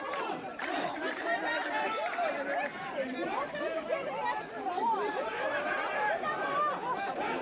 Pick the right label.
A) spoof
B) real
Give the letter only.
A